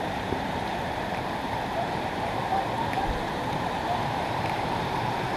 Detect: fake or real fake